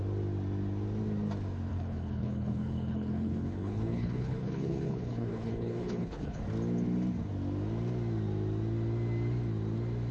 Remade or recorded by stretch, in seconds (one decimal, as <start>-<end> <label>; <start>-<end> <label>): 0.0-1.7 recorded; 1.7-6.4 remade; 6.4-10.1 recorded